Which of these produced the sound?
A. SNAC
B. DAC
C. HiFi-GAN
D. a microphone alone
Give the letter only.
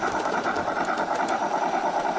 D